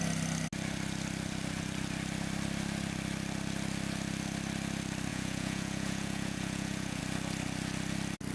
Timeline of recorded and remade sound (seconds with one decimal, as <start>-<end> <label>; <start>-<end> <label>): 0.0-5.1 recorded; 5.1-7.0 remade; 7.0-8.3 recorded